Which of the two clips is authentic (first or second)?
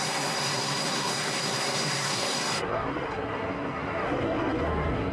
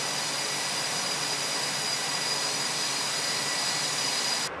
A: second